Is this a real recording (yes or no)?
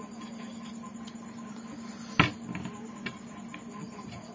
yes